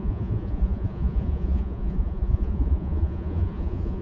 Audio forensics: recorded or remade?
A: remade